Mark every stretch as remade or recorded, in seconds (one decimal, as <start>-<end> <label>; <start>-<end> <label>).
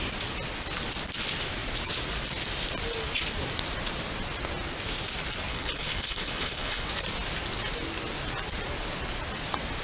0.0-5.5 recorded; 5.5-6.9 remade; 6.9-9.8 recorded